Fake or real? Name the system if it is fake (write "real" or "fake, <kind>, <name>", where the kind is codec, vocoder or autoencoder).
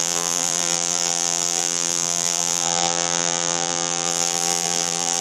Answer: fake, vocoder, BigVGAN v2